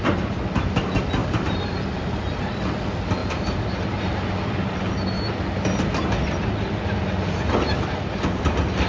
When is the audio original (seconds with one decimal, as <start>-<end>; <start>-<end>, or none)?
0.0-1.2; 2.4-3.2; 4.0-4.6; 5.1-8.9